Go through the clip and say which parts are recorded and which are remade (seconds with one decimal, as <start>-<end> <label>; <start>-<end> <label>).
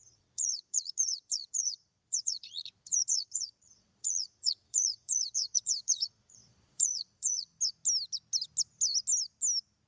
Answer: 0.0-7.5 remade; 7.5-9.9 recorded